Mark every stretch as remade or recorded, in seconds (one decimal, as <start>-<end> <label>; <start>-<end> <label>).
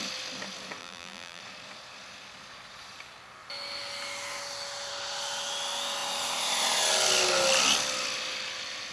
0.0-0.8 recorded; 0.8-1.4 remade; 1.4-8.9 recorded